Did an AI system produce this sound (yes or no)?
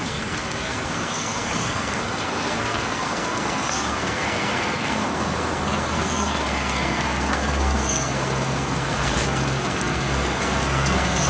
yes